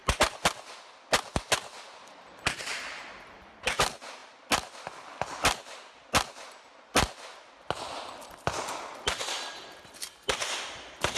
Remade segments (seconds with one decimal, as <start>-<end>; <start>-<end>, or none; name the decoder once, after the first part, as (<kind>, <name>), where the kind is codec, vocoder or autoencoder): none